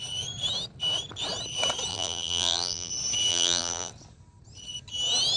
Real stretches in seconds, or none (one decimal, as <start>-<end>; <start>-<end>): 0.0-1.9; 2.9-3.3; 3.9-5.4